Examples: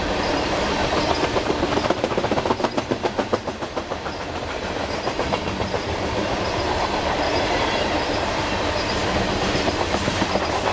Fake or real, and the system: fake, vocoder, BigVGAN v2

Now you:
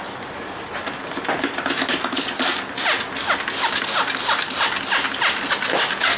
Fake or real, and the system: real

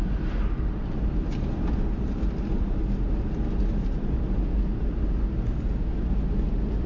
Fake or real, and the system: real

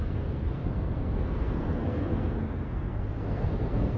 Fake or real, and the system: fake, codec, SNAC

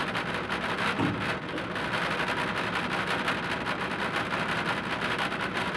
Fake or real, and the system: real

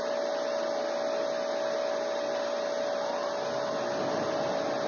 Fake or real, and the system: real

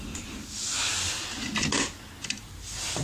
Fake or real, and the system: real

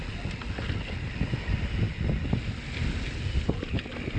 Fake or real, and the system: real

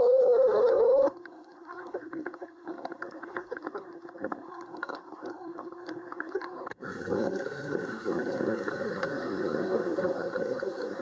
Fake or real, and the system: fake, codec, SNAC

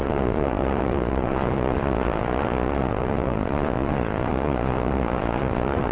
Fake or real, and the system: fake, vocoder, Vocos